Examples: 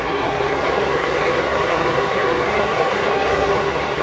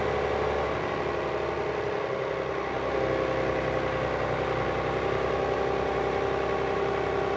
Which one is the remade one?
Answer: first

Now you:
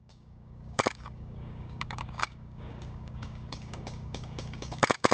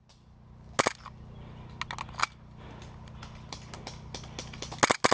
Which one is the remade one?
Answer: first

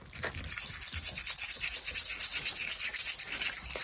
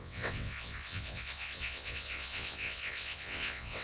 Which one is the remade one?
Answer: second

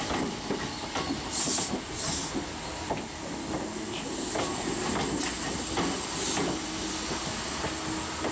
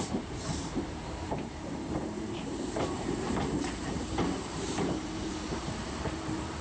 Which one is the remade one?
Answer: second